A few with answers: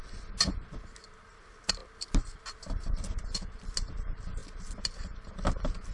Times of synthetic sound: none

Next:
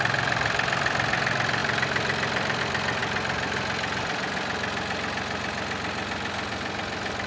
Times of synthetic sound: 1.6-2.6 (vocoder, BigVGAN v2)